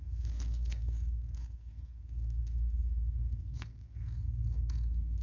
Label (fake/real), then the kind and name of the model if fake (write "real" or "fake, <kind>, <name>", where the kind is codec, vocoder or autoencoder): fake, codec, SNAC